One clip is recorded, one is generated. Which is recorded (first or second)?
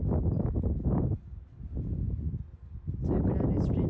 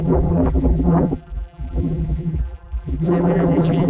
first